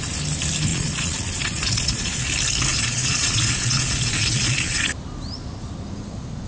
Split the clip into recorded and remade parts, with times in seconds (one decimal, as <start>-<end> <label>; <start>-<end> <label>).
0.0-0.7 recorded; 0.7-2.2 remade; 2.2-2.7 recorded; 2.7-4.9 remade; 4.9-6.5 recorded